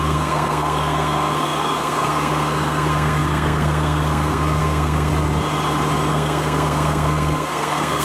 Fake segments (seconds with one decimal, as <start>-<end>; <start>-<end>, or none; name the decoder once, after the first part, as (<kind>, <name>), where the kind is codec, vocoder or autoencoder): 0.0-5.1 (codec, SNAC); 6.1-8.0